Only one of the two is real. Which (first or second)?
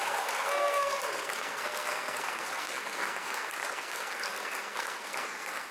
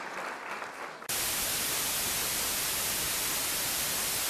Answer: second